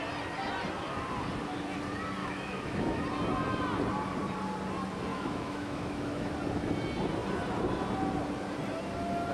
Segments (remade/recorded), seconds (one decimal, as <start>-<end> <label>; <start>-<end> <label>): 0.0-2.2 recorded; 2.2-3.0 remade; 3.0-5.1 recorded; 5.1-6.3 remade; 6.3-9.3 recorded